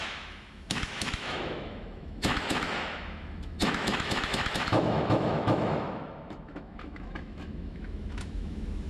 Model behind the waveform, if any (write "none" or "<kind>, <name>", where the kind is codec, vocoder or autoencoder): autoencoder, DAC-VAE